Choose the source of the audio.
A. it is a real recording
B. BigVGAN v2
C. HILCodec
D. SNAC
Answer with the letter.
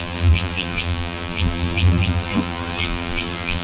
B